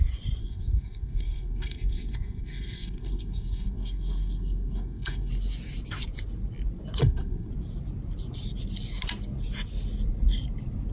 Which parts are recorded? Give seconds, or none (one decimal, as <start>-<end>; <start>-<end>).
0.0-0.4; 5.3-7.0; 7.5-10.9

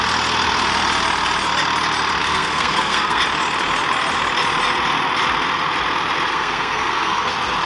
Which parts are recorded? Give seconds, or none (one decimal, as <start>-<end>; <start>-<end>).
0.0-2.2; 3.2-6.3; 7.3-7.7

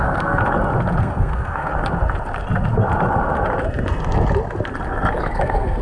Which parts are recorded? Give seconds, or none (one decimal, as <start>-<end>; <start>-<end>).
0.4-1.0; 1.7-5.2

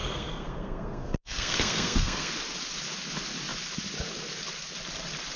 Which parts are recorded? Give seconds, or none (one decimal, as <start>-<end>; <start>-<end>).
2.3-5.4